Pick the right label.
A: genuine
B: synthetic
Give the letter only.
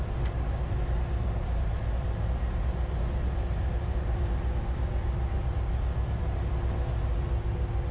A